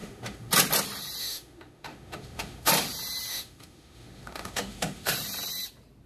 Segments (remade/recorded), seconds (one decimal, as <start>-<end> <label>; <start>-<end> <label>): 0.0-0.5 remade; 0.5-1.2 recorded; 1.2-2.7 remade; 2.7-3.3 recorded; 3.3-5.1 remade; 5.1-6.1 recorded